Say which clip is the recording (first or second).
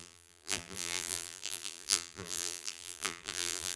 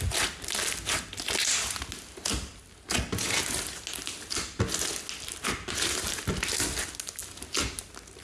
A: second